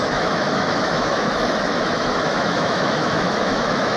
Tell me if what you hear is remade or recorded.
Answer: remade